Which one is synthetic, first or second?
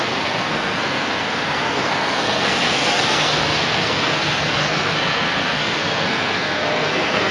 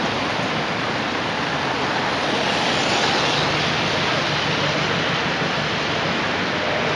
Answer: first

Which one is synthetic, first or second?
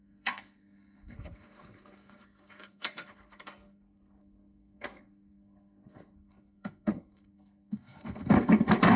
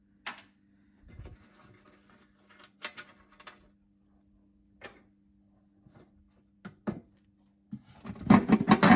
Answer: first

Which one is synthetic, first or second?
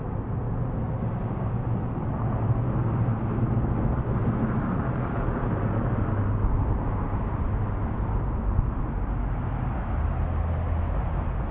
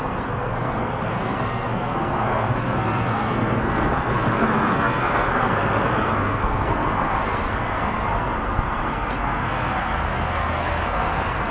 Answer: second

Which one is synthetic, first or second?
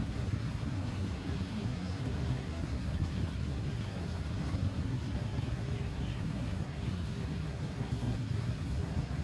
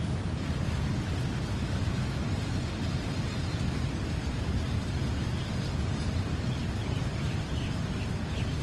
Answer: first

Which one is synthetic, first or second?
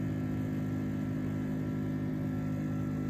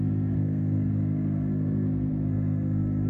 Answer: second